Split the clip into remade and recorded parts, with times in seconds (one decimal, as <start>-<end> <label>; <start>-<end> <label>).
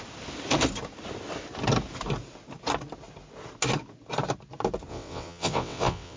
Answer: 0.0-4.9 recorded; 4.9-6.2 remade